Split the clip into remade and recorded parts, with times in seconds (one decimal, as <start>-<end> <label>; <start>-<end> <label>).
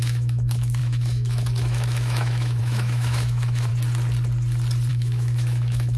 0.0-3.7 remade; 3.7-4.9 recorded; 4.9-6.0 remade